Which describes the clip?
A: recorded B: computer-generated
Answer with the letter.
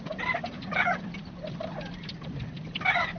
A